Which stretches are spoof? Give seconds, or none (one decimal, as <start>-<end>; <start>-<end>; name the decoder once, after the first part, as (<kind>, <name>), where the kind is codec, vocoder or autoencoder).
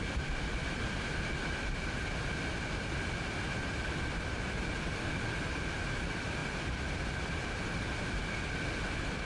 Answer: none